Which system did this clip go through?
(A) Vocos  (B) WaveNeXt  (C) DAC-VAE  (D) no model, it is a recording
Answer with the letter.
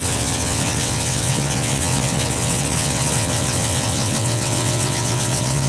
B